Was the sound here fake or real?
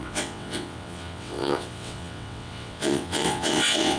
fake